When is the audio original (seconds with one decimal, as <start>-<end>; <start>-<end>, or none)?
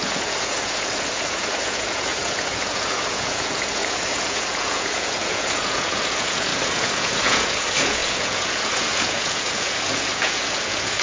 none